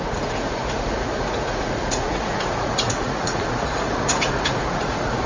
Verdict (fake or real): fake